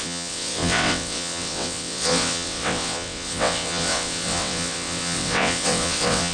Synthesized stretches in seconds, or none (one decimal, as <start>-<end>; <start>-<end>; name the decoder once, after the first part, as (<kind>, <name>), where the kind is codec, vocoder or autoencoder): 0.0-6.3 (vocoder, WaveNeXt)